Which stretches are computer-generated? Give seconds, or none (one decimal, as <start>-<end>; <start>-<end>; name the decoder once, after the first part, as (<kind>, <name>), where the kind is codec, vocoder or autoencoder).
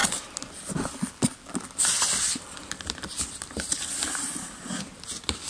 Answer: 0.0-3.3 (vocoder, BigVGAN v2)